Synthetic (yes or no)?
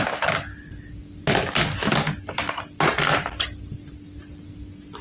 no